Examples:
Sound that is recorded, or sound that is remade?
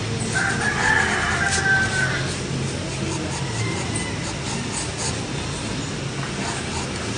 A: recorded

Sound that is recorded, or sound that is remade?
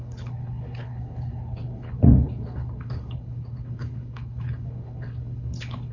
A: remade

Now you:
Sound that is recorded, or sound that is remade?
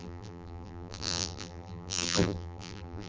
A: remade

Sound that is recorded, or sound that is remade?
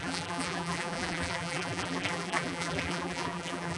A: remade